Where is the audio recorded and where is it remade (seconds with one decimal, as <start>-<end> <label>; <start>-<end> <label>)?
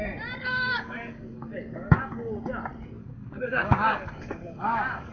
0.0-0.4 recorded; 0.4-2.3 remade; 2.3-3.0 recorded; 3.0-5.1 remade